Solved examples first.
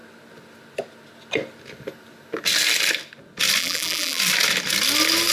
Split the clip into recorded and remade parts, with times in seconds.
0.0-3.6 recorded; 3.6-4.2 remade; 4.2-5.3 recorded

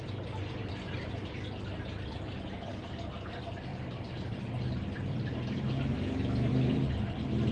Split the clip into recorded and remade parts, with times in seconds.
0.0-0.6 recorded; 0.6-1.1 remade; 1.1-3.7 recorded; 3.7-6.5 remade; 6.5-7.5 recorded

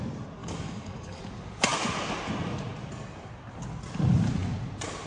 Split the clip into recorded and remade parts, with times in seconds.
0.0-0.4 recorded; 0.4-1.2 remade; 1.2-5.1 recorded